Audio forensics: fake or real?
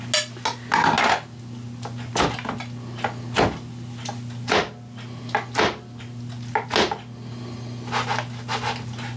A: real